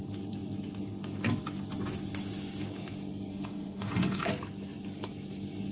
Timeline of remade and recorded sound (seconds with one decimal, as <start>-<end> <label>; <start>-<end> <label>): 0.0-3.3 recorded; 3.3-4.3 remade; 4.3-5.7 recorded